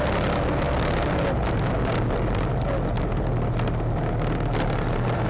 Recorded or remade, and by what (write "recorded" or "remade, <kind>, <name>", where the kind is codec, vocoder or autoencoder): recorded